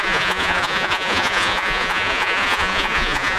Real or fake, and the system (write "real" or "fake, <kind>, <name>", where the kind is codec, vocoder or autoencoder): fake, vocoder, Vocos